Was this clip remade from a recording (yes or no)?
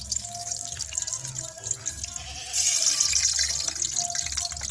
no